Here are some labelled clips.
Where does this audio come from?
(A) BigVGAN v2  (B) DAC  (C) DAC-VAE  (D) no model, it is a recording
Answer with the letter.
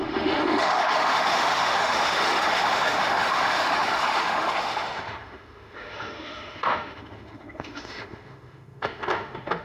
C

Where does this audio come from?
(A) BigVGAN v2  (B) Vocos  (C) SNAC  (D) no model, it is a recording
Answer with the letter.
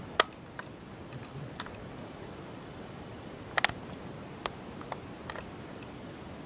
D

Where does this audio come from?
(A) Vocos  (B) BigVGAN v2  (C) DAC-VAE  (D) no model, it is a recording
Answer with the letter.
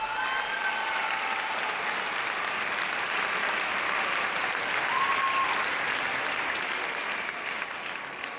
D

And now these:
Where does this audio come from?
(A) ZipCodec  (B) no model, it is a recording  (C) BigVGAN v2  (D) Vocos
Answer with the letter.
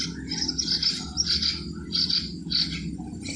B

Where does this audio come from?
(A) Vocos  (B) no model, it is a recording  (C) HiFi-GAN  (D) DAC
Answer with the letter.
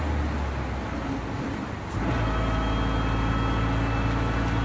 B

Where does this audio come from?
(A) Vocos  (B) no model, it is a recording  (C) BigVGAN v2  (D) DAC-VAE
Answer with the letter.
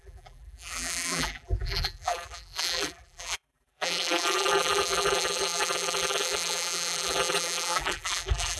C